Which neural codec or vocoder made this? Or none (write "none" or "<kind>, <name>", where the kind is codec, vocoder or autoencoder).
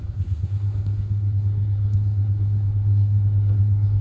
codec, SNAC